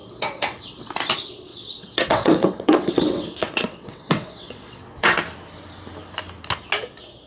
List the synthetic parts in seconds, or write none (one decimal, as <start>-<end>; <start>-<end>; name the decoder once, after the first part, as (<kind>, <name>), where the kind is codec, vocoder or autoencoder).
0.0-0.8 (vocoder, WaveNeXt); 1.5-5.2

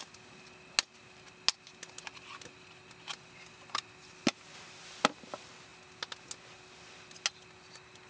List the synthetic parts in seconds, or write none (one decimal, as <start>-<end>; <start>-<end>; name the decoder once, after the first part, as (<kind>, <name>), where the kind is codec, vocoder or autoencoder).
none

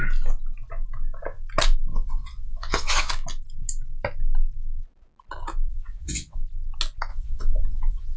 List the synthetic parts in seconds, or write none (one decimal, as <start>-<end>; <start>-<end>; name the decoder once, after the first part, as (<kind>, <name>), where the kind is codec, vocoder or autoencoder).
1.9-3.1 (vocoder, WaveNeXt); 5.7-6.4; 7.1-8.2

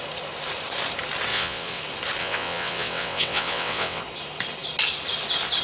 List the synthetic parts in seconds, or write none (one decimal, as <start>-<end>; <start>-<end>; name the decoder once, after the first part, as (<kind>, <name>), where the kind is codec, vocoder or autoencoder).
1.3-1.8 (vocoder, WaveNeXt); 2.2-4.0

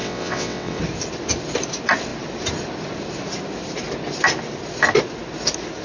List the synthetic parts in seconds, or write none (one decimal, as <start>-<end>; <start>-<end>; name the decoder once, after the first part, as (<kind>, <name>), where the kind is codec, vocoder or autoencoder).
0.0-0.8 (vocoder, WaveNeXt)

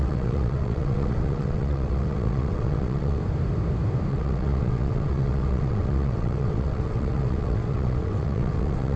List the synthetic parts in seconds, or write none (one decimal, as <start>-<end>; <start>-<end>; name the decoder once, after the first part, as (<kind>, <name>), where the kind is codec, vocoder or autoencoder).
0.0-3.2 (vocoder, WaveNeXt); 4.1-9.0

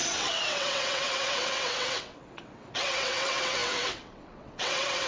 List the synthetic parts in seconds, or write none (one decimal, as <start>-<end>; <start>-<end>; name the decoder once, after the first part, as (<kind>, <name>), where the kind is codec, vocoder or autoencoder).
0.0-5.1 (vocoder, WaveNeXt)

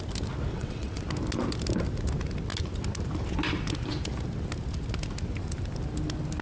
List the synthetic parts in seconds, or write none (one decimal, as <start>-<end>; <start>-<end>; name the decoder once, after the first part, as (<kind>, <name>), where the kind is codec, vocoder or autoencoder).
0.5-1.0 (vocoder, WaveNeXt)